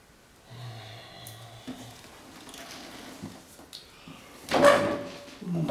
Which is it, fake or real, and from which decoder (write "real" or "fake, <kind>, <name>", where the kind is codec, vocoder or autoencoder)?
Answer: real